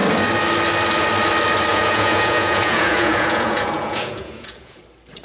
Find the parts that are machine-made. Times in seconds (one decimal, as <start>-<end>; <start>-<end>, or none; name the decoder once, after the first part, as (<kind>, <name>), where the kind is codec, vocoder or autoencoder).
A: 1.7-4.8 (vocoder, Vocos)